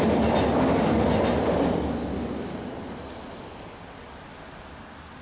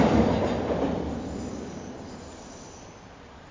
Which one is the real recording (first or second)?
first